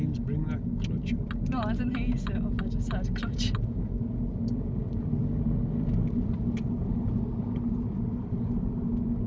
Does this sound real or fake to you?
real